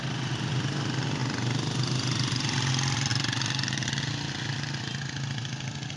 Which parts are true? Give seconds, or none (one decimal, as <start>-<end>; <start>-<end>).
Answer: 0.0-6.0